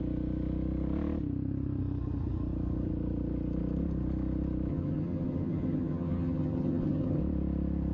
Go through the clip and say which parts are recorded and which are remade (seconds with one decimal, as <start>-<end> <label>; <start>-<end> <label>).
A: 0.0-4.7 recorded; 4.7-7.2 remade; 7.2-7.9 recorded